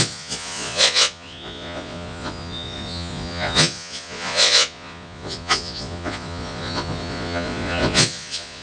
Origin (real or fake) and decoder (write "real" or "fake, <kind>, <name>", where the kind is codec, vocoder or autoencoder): fake, vocoder, Vocos